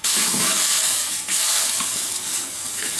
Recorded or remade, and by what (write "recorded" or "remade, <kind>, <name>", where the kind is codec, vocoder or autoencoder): remade, codec, SNAC